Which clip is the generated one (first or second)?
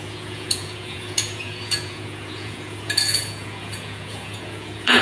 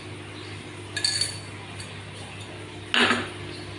first